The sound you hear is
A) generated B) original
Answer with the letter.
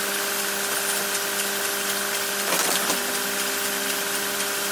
B